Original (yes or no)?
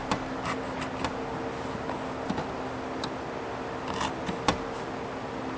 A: yes